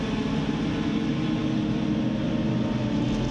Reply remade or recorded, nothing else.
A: recorded